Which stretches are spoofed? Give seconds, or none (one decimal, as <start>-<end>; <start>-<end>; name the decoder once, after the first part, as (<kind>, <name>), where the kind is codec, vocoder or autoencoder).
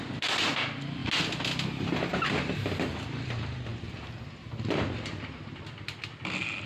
none